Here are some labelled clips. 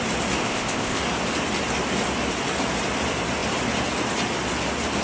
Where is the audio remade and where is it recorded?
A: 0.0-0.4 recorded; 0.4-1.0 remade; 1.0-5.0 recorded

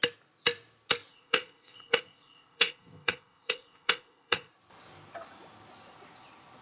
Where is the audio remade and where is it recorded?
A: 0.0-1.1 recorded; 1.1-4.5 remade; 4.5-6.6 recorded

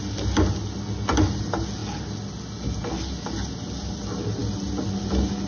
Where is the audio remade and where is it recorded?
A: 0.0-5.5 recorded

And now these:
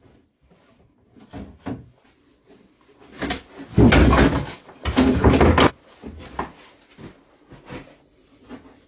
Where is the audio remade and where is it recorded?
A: 0.0-8.9 recorded

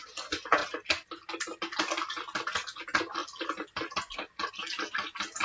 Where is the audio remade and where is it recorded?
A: 0.0-5.4 recorded